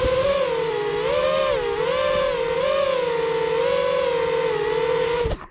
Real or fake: real